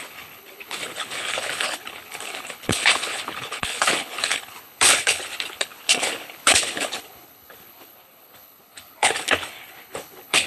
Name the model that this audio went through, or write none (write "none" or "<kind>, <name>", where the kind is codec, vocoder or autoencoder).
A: codec, HILCodec